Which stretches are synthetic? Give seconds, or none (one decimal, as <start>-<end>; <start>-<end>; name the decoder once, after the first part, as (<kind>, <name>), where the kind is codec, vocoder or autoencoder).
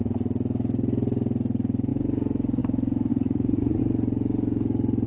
3.1-3.8 (vocoder, Vocos)